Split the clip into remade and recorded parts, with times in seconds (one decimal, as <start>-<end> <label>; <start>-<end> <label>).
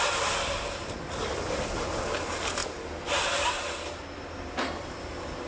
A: 0.0-5.5 recorded